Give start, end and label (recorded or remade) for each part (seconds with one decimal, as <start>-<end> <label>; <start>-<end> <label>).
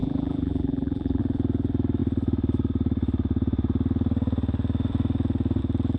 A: 0.0-1.2 remade; 1.2-6.0 recorded